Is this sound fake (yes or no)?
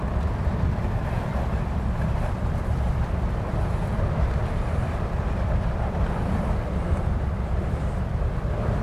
yes